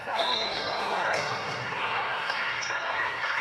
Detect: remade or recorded remade